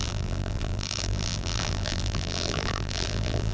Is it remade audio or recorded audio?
remade